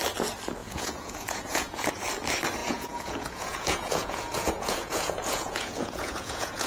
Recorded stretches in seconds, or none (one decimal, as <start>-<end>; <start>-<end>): 0.0-0.6; 2.0-2.6